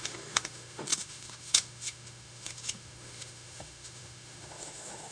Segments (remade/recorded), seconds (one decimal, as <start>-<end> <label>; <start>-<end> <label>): 0.0-5.1 remade